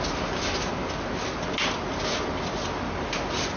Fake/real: real